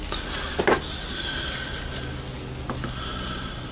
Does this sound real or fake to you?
real